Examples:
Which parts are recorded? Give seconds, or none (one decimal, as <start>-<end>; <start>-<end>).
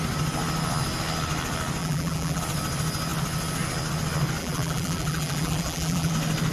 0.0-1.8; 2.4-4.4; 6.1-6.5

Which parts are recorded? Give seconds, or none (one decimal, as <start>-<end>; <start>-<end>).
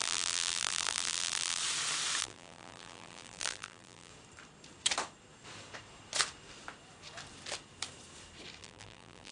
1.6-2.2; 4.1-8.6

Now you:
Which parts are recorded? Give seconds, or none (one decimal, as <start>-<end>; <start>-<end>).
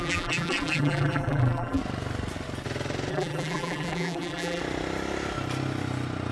1.8-3.1; 4.6-6.3